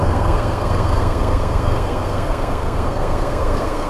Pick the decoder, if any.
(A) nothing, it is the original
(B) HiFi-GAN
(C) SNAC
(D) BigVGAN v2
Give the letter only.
C